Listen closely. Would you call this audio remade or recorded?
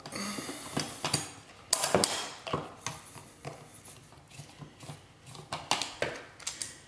recorded